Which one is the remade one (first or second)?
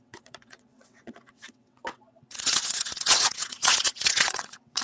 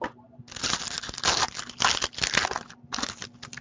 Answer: first